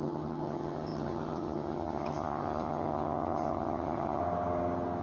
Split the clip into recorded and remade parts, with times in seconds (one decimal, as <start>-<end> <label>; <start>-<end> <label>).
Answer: 0.0-4.2 remade; 4.2-5.0 recorded